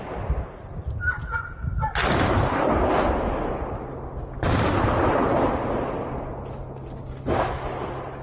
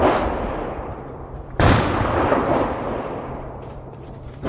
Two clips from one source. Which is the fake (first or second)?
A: second